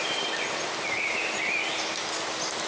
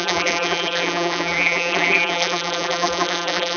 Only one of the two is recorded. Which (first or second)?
first